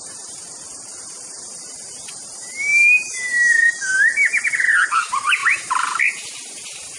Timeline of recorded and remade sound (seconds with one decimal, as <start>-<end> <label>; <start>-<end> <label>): 0.0-0.9 recorded; 0.9-2.1 remade; 2.1-5.4 recorded; 5.4-6.0 remade; 6.0-7.0 recorded